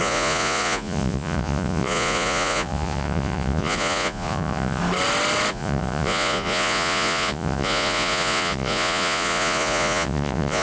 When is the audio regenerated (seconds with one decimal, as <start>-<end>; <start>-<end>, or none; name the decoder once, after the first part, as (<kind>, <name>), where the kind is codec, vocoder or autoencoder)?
0.0-4.8 (vocoder, Vocos); 5.5-10.6